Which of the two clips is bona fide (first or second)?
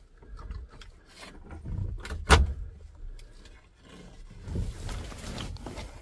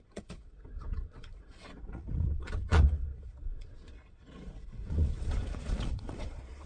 first